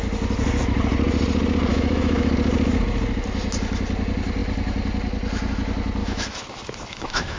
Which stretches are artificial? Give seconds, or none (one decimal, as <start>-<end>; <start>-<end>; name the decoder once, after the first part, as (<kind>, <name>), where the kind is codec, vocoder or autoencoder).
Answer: 1.7-2.3 (autoencoder, DAC-VAE); 6.0-7.4